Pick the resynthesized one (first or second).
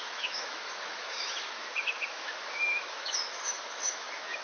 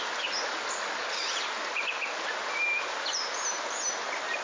first